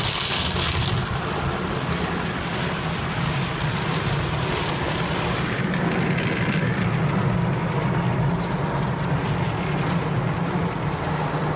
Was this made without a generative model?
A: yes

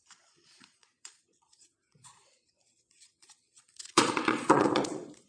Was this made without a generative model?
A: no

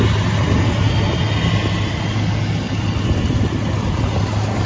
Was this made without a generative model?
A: yes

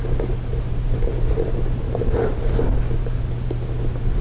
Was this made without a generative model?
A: yes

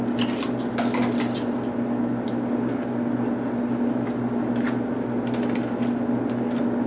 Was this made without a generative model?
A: yes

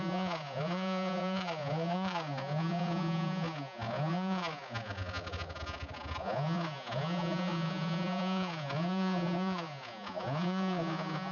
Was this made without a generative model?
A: no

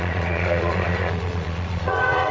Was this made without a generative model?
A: no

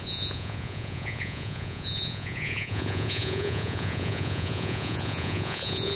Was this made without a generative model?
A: no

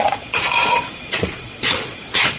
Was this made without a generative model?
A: no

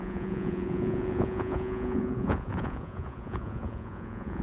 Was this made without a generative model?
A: no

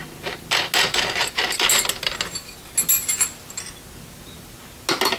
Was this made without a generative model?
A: yes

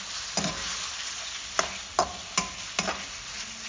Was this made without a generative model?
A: yes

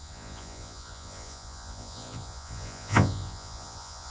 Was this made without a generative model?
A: no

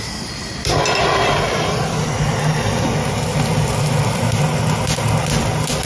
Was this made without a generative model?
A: yes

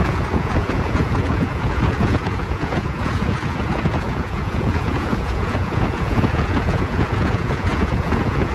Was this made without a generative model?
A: no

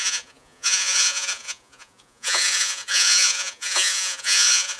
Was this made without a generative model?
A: no